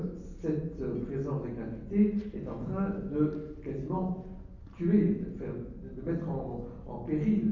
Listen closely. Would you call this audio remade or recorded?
recorded